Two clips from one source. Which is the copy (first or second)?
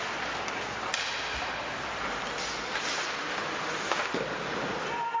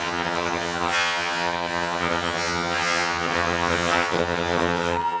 second